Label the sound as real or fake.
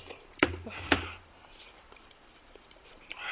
fake